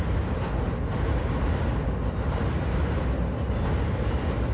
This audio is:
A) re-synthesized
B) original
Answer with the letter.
B